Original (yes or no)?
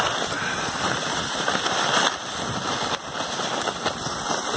yes